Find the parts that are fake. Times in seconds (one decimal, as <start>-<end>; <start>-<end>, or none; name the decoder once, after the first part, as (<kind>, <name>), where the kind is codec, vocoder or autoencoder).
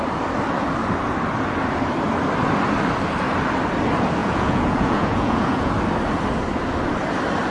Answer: 4.2-5.7 (vocoder, Vocos)